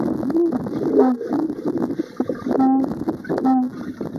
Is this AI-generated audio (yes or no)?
no